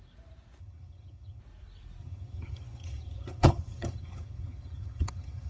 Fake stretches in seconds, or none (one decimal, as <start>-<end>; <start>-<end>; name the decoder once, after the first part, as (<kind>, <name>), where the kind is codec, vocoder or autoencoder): 0.6-1.4 (vocoder, HiFi-GAN); 2.0-5.5